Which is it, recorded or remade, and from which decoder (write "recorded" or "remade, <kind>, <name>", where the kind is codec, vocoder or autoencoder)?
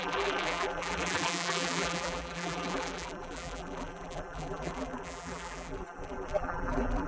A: remade, vocoder, BigVGAN v2